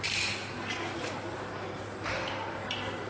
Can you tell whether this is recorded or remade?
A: recorded